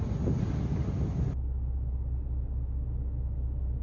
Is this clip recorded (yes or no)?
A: yes